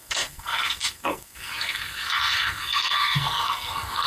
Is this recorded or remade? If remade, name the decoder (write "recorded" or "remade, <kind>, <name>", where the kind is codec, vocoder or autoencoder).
remade, codec, SNAC